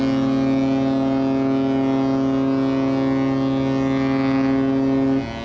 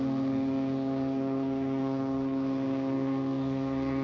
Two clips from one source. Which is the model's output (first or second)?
second